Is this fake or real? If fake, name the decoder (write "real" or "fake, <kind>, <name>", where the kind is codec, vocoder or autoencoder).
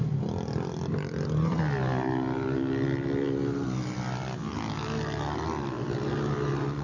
real